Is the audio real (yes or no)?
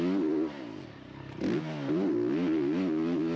yes